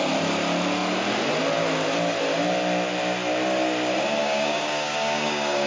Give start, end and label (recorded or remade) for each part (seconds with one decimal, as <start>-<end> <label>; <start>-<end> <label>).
0.0-4.2 recorded; 4.2-5.7 remade